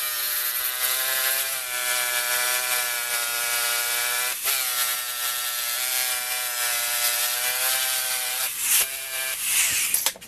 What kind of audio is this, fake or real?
real